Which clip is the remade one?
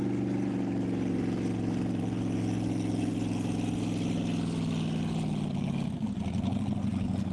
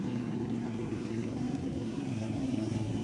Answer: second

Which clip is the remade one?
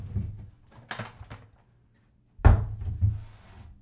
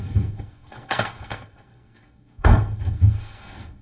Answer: second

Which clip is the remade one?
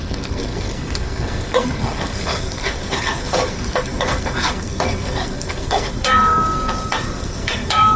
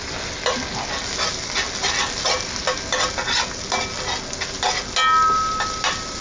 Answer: first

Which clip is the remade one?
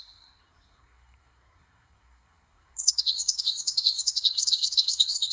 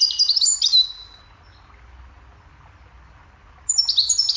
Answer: first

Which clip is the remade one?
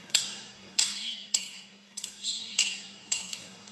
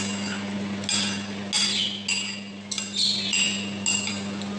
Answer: first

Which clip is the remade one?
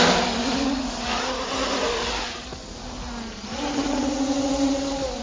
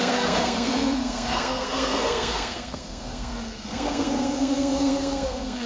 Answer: second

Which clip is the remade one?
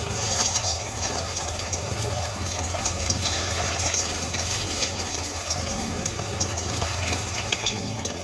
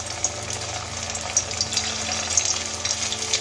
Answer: first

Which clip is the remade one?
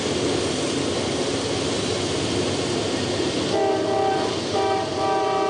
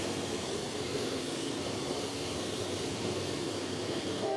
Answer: second